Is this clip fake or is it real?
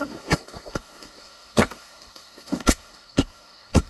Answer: fake